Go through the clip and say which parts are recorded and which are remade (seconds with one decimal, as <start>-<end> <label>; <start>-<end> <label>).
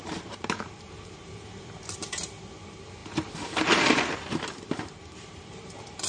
0.0-2.2 remade; 2.2-3.0 recorded; 3.0-6.1 remade